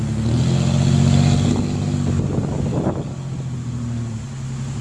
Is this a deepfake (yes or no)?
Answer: no